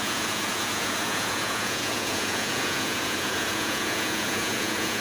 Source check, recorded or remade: remade